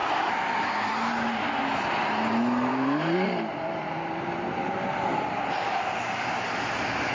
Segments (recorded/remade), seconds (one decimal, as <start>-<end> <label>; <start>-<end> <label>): 0.0-2.7 recorded; 2.7-5.8 remade; 5.8-7.1 recorded